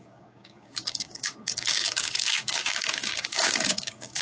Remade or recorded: remade